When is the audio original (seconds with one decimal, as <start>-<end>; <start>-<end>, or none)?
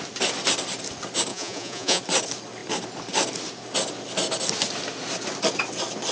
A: 0.0-1.3; 2.0-6.1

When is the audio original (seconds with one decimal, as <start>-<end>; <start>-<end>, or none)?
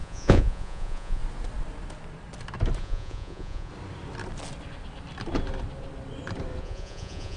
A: 1.2-2.8; 3.7-6.6